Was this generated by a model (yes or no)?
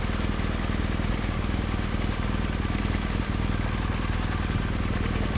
no